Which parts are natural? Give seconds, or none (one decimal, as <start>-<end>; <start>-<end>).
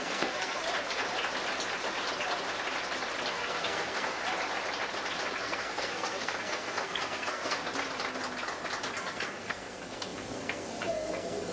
0.6-3.3; 4.2-5.4; 7.6-8.9